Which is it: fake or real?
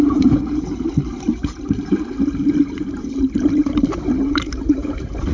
fake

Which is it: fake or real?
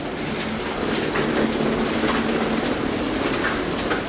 real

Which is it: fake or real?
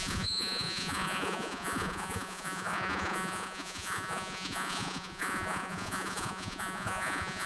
fake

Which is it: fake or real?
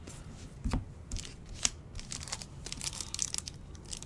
real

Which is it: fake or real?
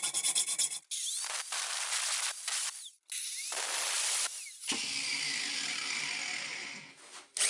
real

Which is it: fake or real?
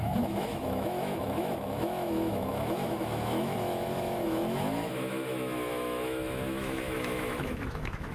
fake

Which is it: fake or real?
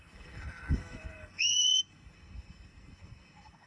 fake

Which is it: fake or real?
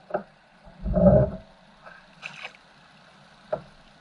real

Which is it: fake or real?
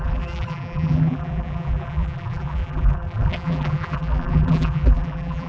fake